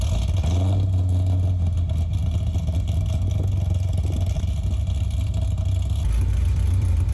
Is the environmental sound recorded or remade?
recorded